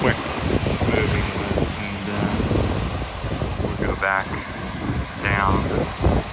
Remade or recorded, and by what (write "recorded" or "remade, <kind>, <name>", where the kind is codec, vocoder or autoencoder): recorded